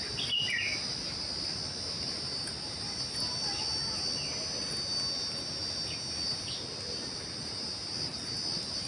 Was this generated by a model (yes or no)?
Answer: no